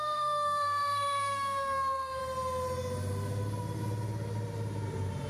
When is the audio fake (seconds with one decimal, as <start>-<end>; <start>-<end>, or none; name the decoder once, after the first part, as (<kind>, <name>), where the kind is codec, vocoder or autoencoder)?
0.0-2.2 (codec, SNAC)